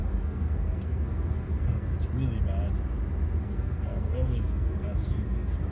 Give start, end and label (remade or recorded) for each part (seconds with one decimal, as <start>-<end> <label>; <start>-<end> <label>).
0.0-1.9 remade; 1.9-3.4 recorded; 3.4-5.7 remade